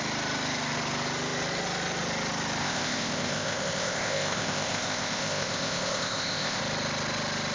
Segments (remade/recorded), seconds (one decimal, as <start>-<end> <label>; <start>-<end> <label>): 0.0-2.6 recorded; 2.6-6.6 remade; 6.6-7.5 recorded